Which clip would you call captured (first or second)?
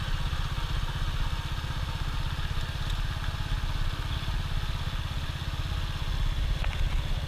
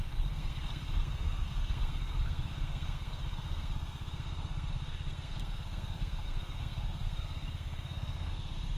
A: first